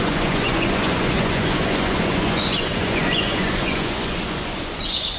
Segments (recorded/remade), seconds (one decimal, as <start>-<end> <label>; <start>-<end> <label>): 0.0-5.2 remade